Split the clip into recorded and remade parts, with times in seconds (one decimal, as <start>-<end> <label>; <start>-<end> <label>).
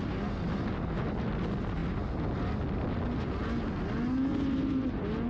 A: 0.0-5.3 recorded